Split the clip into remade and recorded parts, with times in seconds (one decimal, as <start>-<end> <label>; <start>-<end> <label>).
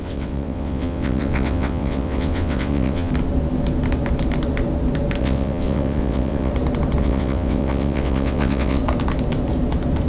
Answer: 0.0-3.1 remade; 3.1-5.2 recorded; 5.2-6.5 remade; 6.5-7.0 recorded; 7.0-8.8 remade; 8.8-10.1 recorded